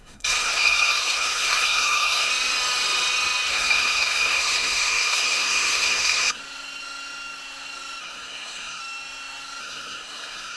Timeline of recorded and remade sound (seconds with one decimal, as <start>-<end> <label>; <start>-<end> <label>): 0.0-2.3 remade; 2.3-3.5 recorded; 3.5-6.4 remade; 6.4-8.0 recorded; 8.0-8.8 remade; 8.8-9.6 recorded; 9.6-10.6 remade